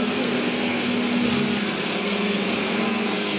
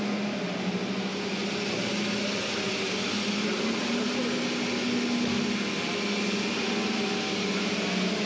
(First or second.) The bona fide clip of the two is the second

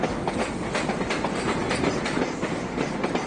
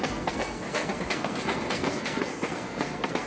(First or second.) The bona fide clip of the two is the first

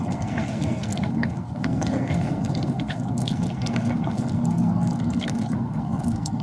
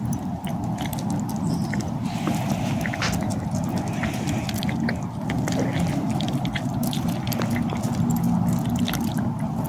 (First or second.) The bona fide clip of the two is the second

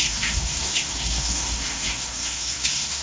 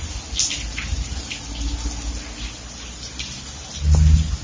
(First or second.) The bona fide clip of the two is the second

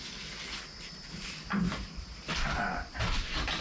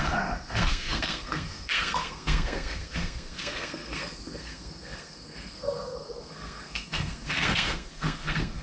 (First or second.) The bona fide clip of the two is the first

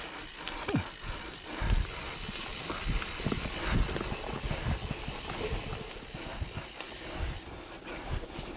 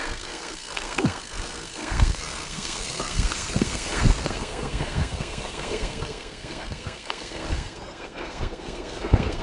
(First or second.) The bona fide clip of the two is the first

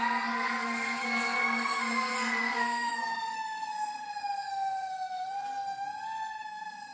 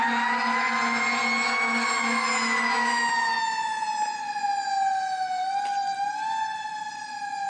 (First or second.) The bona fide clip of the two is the second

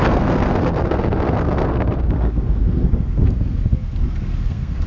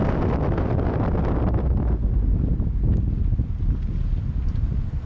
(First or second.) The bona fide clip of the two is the second